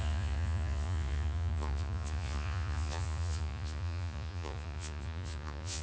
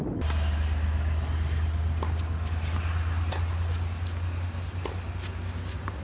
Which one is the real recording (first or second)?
second